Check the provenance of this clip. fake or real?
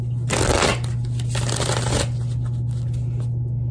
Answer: real